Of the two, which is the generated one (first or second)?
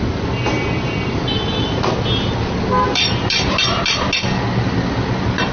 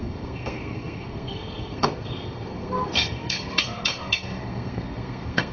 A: second